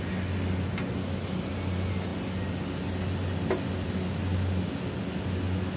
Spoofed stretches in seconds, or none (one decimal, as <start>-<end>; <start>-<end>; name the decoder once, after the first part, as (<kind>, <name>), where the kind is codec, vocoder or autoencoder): none